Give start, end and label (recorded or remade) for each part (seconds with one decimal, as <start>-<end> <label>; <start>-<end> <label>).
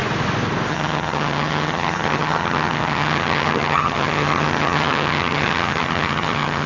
0.0-0.7 recorded; 0.7-6.7 remade